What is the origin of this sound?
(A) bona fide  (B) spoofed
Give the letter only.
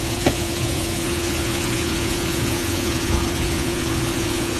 B